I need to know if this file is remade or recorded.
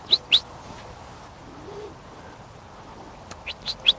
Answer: recorded